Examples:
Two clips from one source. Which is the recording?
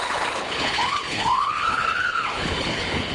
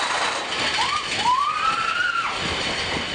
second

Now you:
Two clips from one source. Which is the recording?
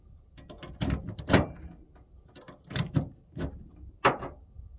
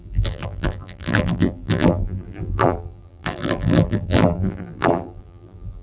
first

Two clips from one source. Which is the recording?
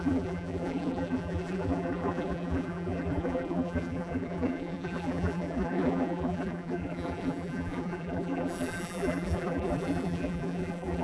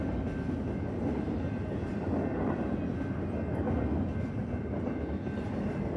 second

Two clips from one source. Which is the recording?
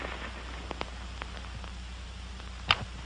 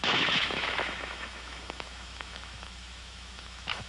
first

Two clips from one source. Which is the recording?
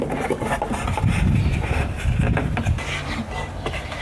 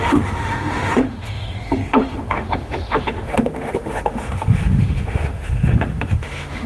first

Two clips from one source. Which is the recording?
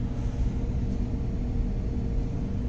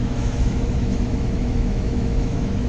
first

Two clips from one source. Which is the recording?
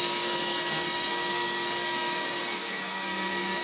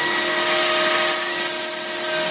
second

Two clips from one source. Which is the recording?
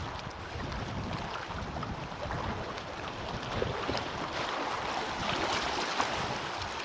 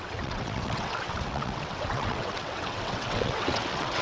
first